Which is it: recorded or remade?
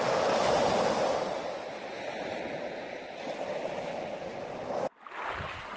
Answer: recorded